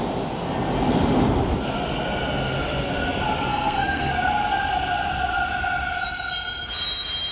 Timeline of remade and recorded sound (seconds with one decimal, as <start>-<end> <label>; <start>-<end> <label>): 0.0-3.5 recorded; 3.5-4.1 remade; 4.1-7.3 recorded